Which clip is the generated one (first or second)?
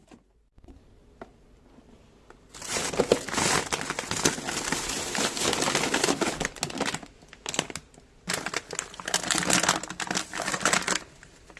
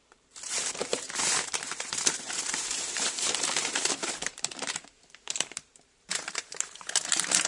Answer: second